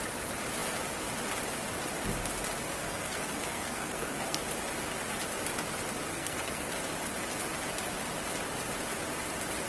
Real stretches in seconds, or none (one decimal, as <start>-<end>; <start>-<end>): 0.0-2.8; 4.4-6.1; 6.7-9.7